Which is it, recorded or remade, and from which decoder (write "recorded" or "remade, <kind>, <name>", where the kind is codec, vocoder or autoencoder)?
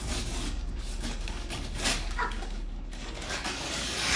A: remade, codec, DAC